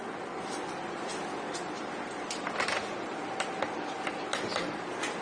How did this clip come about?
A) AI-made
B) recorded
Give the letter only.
B